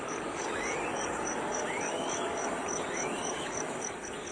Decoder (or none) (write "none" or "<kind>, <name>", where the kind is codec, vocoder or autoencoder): codec, DAC